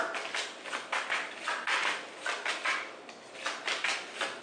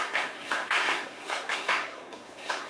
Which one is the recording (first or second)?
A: first